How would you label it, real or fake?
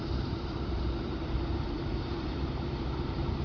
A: fake